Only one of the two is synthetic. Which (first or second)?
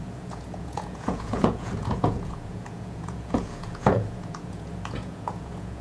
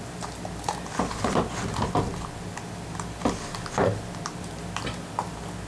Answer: first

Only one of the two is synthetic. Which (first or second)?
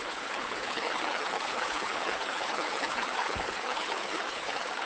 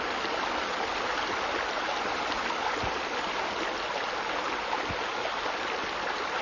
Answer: first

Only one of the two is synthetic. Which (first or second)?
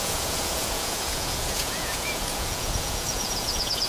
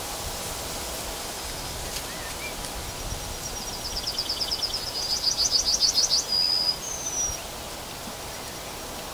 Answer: first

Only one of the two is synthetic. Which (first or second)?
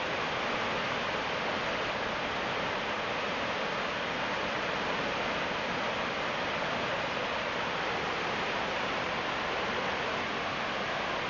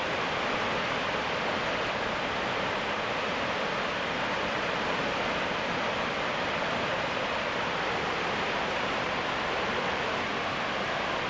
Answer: second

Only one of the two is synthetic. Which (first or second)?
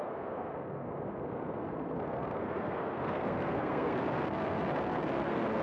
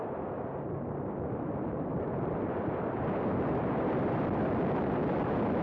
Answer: first